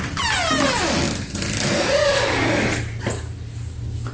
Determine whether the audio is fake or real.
real